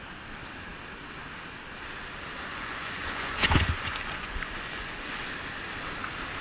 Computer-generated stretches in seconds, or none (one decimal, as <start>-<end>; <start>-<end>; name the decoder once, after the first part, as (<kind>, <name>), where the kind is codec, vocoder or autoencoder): 2.5-5.2 (vocoder, Vocos)